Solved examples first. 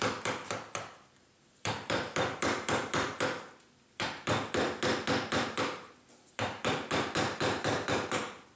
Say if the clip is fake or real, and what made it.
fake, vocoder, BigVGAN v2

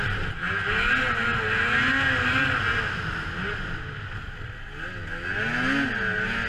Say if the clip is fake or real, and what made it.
real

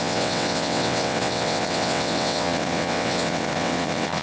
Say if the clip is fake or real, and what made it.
fake, vocoder, WaveNeXt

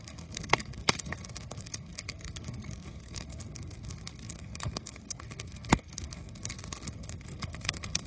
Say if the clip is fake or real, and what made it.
fake, codec, SNAC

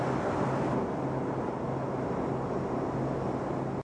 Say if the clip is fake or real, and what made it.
real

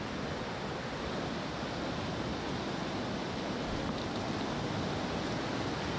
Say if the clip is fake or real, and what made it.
real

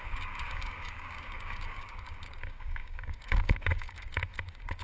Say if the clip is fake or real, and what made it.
fake, codec, DAC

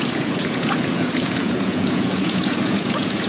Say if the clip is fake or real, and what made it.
fake, vocoder, Vocos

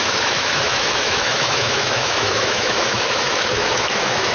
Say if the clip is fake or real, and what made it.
fake, autoencoder, DAC-VAE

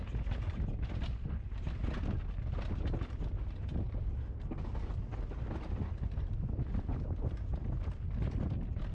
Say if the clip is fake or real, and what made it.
real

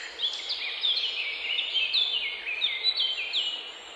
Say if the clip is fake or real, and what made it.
real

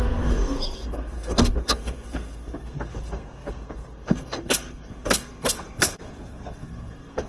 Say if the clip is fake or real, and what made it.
fake, codec, SNAC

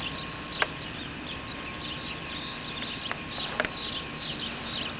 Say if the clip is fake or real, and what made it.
real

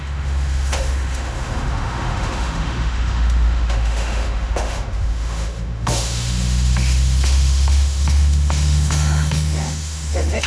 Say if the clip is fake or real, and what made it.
fake, autoencoder, DAC-VAE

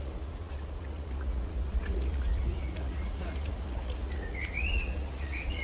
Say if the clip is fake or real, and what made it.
fake, vocoder, Vocos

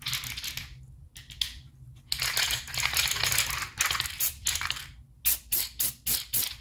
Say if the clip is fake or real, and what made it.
real